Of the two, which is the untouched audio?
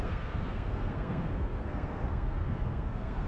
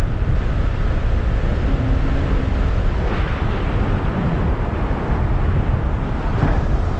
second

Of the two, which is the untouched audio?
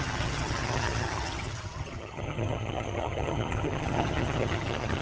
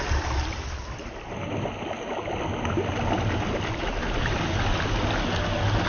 second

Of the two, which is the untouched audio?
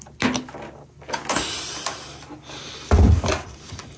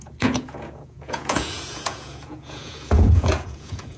first